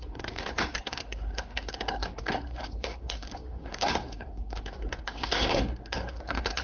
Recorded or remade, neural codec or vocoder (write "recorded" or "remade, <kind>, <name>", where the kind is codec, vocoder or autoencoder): remade, codec, SNAC